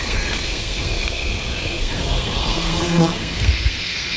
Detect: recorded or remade remade